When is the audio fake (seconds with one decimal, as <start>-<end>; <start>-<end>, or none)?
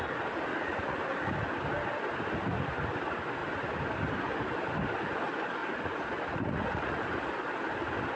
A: 0.5-1.3; 5.6-7.0